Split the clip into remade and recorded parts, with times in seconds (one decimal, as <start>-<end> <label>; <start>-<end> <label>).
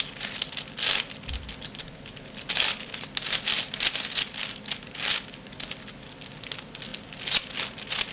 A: 0.0-8.1 recorded